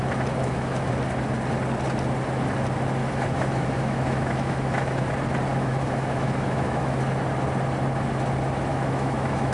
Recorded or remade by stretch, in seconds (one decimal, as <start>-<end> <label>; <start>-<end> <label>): 0.0-0.4 recorded; 0.4-0.9 remade; 0.9-3.0 recorded; 3.0-5.0 remade; 5.0-5.5 recorded; 5.5-7.0 remade; 7.0-8.7 recorded; 8.7-9.5 remade